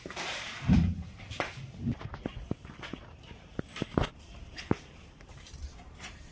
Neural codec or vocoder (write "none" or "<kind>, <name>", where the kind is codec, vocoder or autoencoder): vocoder, BigVGAN v2